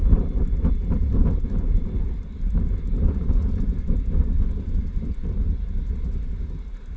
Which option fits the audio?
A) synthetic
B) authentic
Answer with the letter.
B